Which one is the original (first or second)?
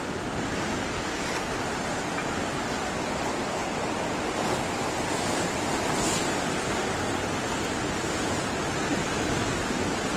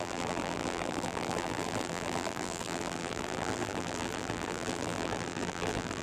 first